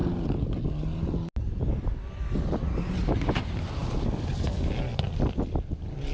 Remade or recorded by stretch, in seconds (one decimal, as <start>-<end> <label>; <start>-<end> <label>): 0.0-6.1 recorded